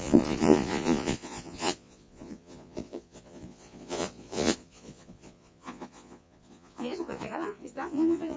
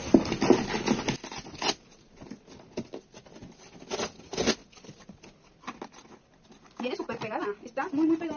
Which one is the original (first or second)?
second